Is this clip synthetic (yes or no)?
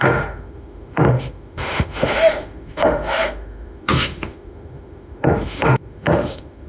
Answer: yes